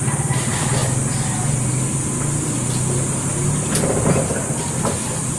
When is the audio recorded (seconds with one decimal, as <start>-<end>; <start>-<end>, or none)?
0.0-5.4